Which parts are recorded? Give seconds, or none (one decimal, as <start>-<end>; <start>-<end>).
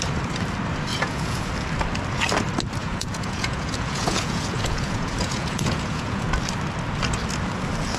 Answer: 0.0-0.9; 1.5-2.8; 6.3-8.0